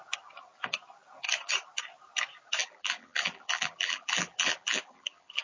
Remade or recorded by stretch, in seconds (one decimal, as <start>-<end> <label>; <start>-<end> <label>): 0.0-2.6 recorded; 2.6-5.4 remade